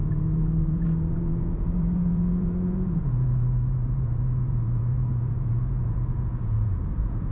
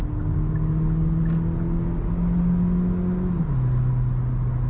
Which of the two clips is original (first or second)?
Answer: second